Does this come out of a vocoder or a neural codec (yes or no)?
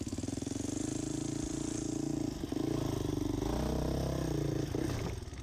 no